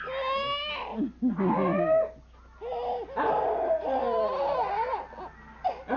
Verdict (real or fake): real